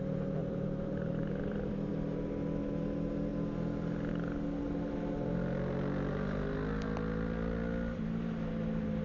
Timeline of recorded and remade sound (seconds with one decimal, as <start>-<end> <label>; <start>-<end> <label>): 0.0-0.4 recorded; 0.4-1.9 remade; 1.9-9.0 recorded